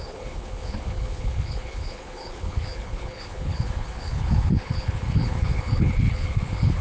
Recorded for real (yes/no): no